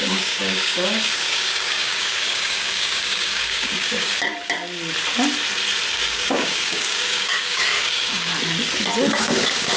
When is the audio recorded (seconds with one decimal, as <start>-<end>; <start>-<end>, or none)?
4.3-5.9; 8.3-9.2